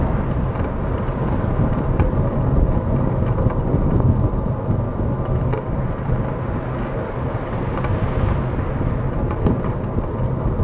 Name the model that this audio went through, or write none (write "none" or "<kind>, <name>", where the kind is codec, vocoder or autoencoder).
none